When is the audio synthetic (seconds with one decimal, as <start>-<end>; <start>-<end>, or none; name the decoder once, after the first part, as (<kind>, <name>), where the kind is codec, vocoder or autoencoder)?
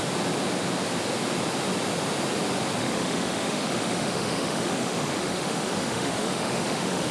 2.8-7.1 (autoencoder, DAC-VAE)